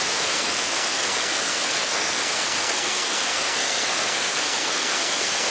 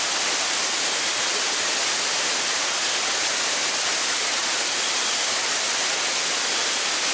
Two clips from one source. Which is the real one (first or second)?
second